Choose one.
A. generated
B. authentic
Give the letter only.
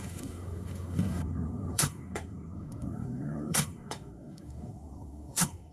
A